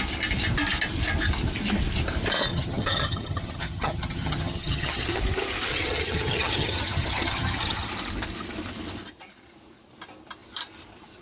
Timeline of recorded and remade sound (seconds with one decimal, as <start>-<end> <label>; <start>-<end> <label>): 0.0-2.5 recorded; 2.5-5.2 remade; 5.2-5.7 recorded; 5.7-7.9 remade; 7.9-11.2 recorded